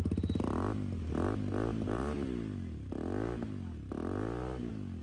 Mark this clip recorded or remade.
recorded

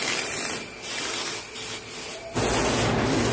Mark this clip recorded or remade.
recorded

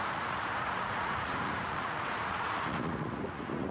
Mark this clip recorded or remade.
remade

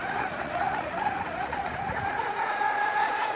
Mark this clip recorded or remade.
remade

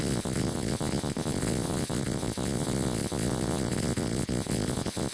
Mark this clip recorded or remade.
remade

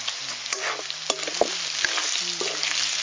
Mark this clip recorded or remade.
recorded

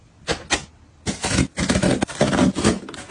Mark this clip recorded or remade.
recorded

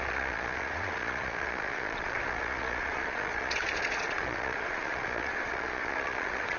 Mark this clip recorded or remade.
remade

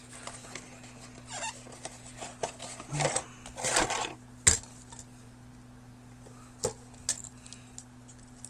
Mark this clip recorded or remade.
recorded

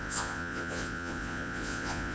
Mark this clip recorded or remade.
remade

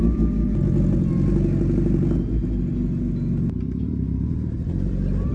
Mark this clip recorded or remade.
recorded